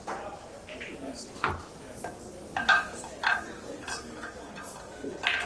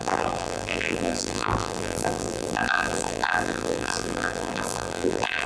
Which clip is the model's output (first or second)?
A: second